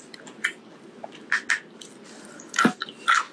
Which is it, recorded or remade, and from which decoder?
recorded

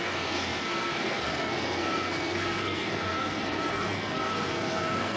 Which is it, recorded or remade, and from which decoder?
remade, codec, SNAC